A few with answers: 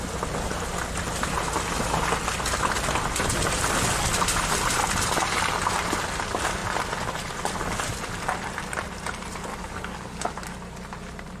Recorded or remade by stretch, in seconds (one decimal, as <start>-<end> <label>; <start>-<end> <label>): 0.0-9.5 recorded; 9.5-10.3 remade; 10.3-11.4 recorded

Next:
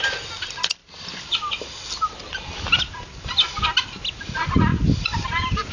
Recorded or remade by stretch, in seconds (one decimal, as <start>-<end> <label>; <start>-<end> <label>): 0.0-5.7 recorded

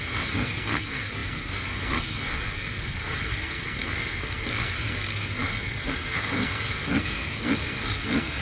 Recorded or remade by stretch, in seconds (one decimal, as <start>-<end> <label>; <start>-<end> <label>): 0.0-8.4 remade

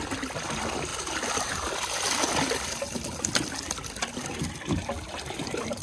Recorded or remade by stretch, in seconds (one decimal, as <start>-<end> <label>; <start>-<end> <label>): 0.0-5.8 recorded

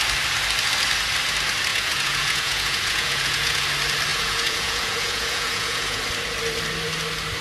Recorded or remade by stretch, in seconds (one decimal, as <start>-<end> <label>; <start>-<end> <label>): 0.0-1.7 recorded; 1.7-3.6 remade; 3.6-4.1 recorded; 4.1-6.0 remade; 6.0-7.4 recorded

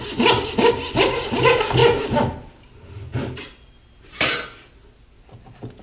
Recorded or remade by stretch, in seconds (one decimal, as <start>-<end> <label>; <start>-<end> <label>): 0.0-5.8 recorded

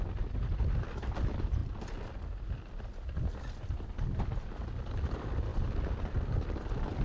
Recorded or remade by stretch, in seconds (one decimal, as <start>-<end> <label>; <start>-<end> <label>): 0.0-5.5 recorded; 5.5-7.0 remade